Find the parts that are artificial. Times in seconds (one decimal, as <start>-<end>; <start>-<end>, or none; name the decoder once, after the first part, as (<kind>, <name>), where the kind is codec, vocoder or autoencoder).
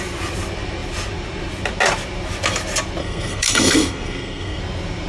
3.0-4.6 (codec, SNAC)